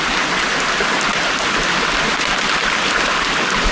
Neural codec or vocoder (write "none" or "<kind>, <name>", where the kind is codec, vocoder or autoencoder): none